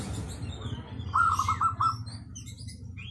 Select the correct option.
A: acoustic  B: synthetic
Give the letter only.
A